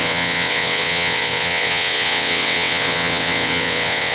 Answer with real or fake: fake